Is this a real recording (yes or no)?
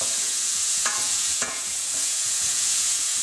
no